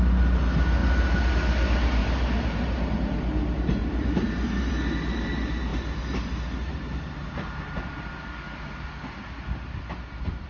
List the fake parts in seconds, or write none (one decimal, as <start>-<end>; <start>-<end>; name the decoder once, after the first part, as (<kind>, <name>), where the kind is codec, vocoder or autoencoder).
2.0-2.9 (vocoder, BigVGAN v2); 3.8-4.7; 5.7-7.2